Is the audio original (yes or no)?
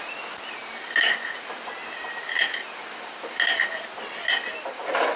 yes